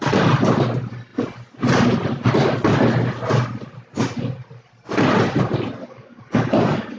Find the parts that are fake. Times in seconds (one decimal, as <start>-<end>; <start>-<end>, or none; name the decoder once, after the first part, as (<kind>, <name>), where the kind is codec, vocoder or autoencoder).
5.8-7.0 (codec, DAC)